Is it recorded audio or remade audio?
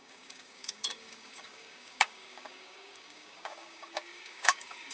remade